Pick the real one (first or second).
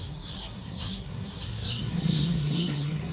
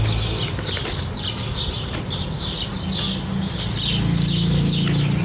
second